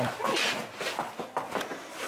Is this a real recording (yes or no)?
yes